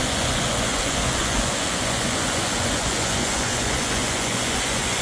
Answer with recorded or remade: remade